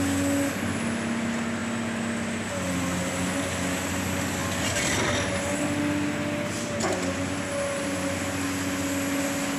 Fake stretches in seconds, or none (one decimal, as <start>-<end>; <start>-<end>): none